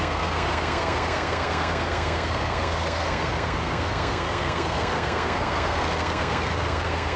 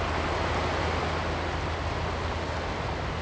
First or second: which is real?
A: second